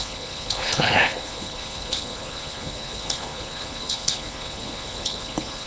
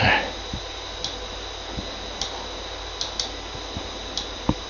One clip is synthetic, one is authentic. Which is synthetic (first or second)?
first